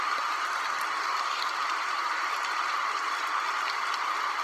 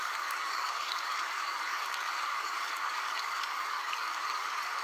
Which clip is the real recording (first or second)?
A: first